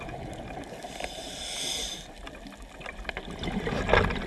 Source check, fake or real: real